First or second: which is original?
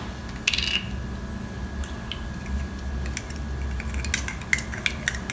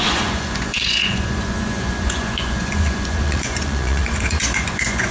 first